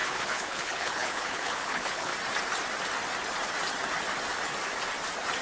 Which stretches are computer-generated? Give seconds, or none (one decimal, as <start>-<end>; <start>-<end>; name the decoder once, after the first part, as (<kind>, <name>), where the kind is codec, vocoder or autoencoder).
0.0-2.1 (codec, HILCodec)